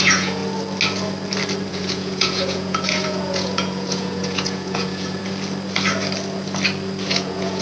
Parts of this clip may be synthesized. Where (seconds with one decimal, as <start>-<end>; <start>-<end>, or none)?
0.0-0.4; 1.7-5.2; 7.1-7.6